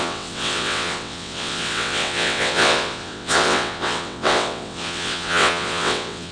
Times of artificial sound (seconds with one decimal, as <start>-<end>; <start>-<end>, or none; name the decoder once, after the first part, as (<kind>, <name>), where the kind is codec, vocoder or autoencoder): 0.0-6.3 (vocoder, WaveNeXt)